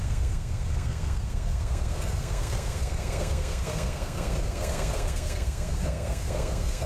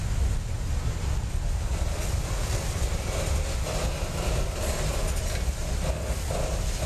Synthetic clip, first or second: first